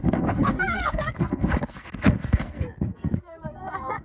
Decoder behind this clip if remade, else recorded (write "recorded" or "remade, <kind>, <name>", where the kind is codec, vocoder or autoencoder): remade, codec, SNAC